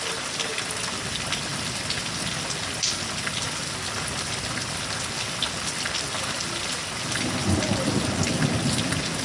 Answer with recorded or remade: recorded